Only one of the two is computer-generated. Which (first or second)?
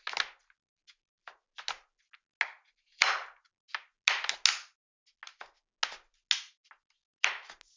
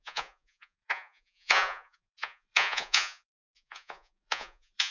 second